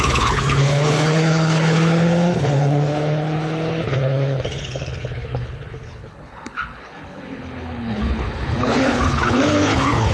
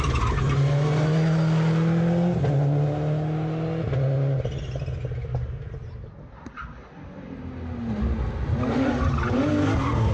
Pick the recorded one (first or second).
second